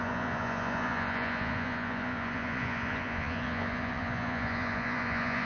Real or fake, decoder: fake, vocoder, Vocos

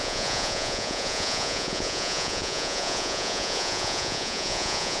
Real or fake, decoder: fake, vocoder, Vocos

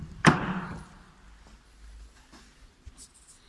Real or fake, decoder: real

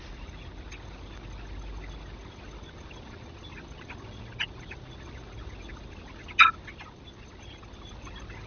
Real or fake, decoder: real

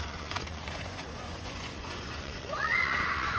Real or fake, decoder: fake, vocoder, Vocos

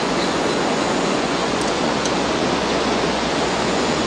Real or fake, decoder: fake, vocoder, Vocos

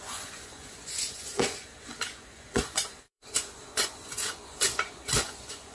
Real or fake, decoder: fake, vocoder, Vocos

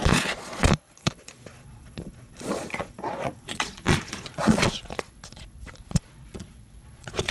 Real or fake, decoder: fake, vocoder, Vocos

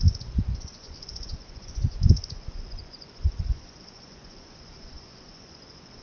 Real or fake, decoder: fake, vocoder, Vocos